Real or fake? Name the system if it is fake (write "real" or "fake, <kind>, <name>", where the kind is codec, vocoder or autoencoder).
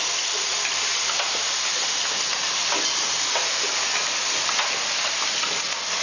real